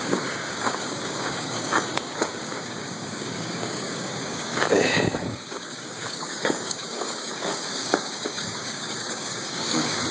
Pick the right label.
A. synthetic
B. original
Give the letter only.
A